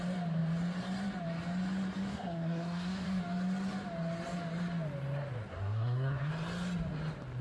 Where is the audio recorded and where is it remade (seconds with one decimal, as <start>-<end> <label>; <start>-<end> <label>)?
0.0-2.1 recorded; 2.1-3.2 remade; 3.2-5.5 recorded; 5.5-6.3 remade; 6.3-7.4 recorded